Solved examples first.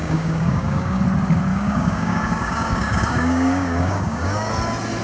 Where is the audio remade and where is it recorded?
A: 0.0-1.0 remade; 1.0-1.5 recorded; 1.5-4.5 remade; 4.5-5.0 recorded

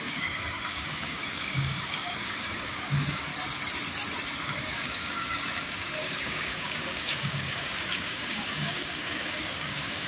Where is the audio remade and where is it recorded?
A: 0.0-3.3 remade; 3.3-4.4 recorded; 4.4-10.1 remade

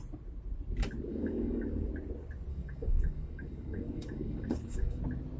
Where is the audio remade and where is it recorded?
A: 0.0-1.1 recorded; 1.1-1.9 remade; 1.9-2.5 recorded; 2.5-5.0 remade; 5.0-5.4 recorded

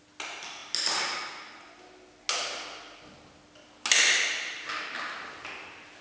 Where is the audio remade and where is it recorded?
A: 0.0-6.0 recorded

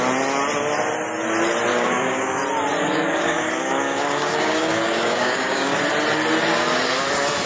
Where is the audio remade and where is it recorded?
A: 0.0-1.7 recorded; 1.7-2.4 remade; 2.4-2.8 recorded; 2.8-5.8 remade; 5.8-7.5 recorded